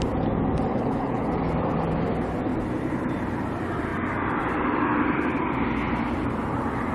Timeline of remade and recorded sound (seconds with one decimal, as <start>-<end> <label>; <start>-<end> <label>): 0.0-0.7 recorded; 0.7-1.3 remade; 1.3-6.9 recorded